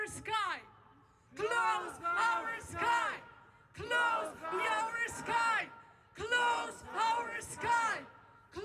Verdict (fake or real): real